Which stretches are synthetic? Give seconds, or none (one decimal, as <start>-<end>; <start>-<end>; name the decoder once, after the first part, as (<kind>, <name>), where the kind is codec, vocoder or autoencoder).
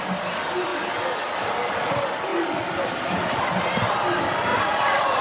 4.5-5.2 (vocoder, Vocos)